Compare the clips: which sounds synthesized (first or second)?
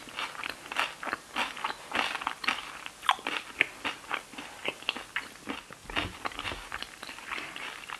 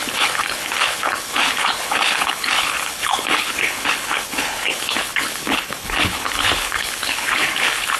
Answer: second